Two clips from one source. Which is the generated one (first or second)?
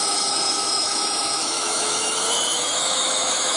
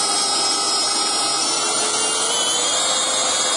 first